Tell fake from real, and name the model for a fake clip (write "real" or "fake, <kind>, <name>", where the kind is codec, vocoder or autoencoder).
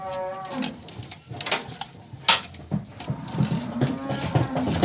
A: real